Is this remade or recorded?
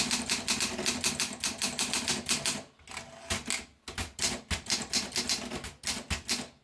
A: recorded